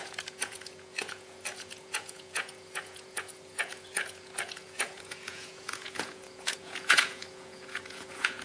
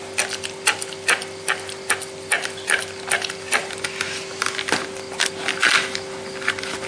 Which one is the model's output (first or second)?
first